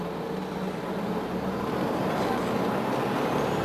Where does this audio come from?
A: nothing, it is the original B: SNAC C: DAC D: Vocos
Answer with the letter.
A